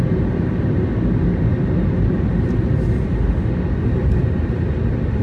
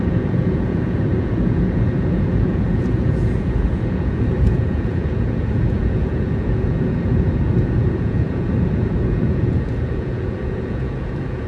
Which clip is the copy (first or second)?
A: second